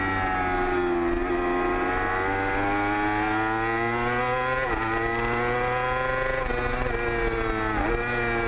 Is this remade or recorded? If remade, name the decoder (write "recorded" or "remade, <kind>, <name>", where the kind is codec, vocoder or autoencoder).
recorded